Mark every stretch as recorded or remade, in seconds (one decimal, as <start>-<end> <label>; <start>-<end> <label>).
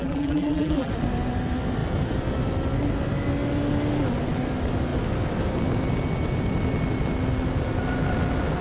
0.0-0.9 remade; 0.9-8.6 recorded